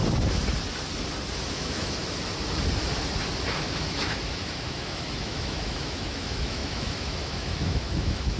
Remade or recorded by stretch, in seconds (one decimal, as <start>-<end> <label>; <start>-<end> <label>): 0.0-1.5 recorded; 1.5-2.0 remade; 2.0-3.6 recorded; 3.6-8.4 remade